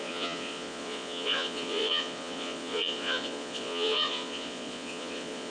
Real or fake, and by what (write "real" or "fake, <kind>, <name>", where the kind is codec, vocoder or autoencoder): fake, vocoder, Vocos